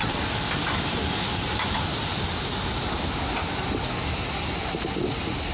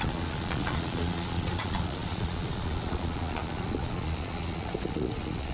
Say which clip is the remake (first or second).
second